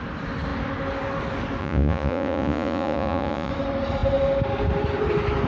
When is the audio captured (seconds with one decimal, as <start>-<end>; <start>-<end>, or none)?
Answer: 0.0-1.6; 3.5-5.5

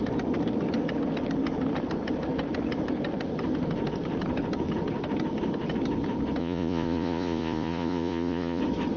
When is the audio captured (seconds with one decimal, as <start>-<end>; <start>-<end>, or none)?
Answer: 0.0-6.4; 8.6-9.0